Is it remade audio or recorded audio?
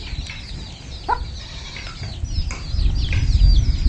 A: recorded